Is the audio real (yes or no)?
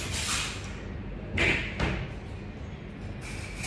yes